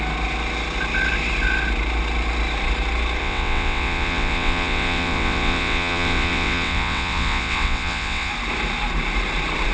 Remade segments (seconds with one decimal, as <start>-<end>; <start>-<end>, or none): 3.2-8.3